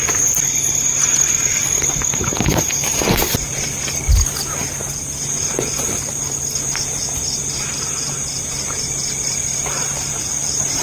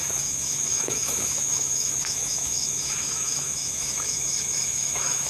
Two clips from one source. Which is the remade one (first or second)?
second